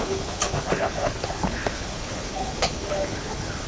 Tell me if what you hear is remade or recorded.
remade